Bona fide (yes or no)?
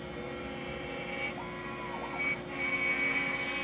yes